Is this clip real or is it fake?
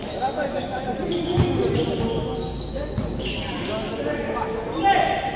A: real